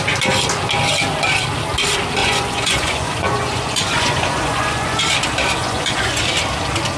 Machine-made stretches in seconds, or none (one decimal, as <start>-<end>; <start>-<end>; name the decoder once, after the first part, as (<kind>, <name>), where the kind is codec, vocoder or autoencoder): 2.2-5.0 (vocoder, Vocos); 5.6-6.2